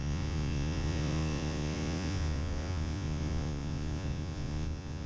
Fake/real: fake